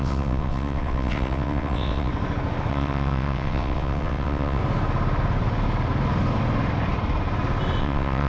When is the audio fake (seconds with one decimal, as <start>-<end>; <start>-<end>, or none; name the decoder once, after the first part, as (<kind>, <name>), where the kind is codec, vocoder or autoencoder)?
0.0-2.1 (vocoder, WaveNeXt); 2.7-4.6; 7.8-8.3